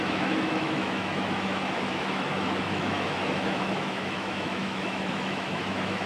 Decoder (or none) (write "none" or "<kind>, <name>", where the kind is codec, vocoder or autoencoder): autoencoder, DAC-VAE